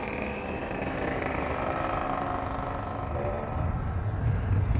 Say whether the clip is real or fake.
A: real